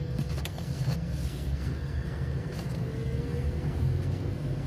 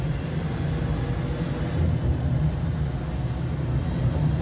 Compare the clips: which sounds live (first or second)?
second